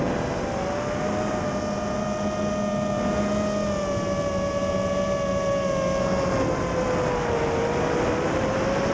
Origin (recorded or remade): recorded